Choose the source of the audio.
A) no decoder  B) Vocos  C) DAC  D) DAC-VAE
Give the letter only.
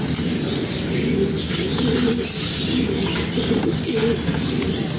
A